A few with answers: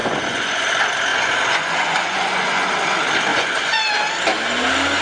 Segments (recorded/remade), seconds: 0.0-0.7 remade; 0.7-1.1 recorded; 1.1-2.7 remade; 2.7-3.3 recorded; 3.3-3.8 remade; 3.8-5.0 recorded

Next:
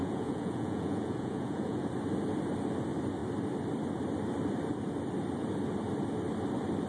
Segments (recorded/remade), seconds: 0.0-1.9 remade; 1.9-6.9 recorded

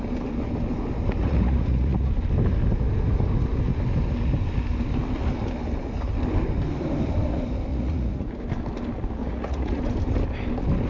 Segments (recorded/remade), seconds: 0.0-1.2 recorded; 1.2-2.1 remade; 2.1-7.7 recorded; 7.7-8.3 remade; 8.3-9.2 recorded; 9.2-9.8 remade; 9.8-10.9 recorded